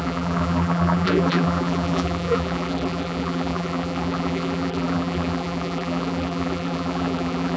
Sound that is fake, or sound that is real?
fake